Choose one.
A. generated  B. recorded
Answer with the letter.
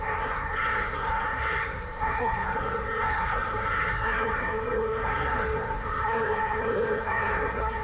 A